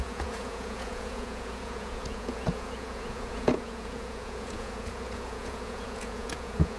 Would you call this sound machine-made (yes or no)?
yes